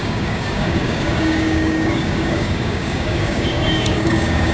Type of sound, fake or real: fake